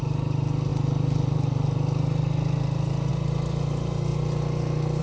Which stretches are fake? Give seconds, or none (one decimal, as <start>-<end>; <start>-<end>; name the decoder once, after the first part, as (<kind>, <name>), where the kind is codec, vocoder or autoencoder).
none